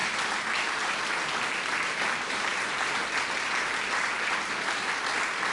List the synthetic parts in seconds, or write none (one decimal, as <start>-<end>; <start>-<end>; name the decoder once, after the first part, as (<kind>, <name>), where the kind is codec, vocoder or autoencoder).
none